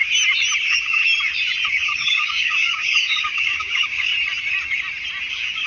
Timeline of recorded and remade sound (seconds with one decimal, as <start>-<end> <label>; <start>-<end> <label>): 0.0-0.6 recorded; 0.6-1.0 remade; 1.0-1.7 recorded; 1.7-4.1 remade; 4.1-5.3 recorded; 5.3-5.7 remade